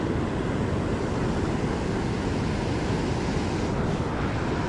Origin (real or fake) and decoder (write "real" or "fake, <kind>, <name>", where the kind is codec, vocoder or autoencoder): real